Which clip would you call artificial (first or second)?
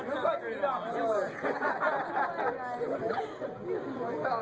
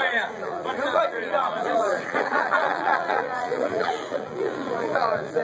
second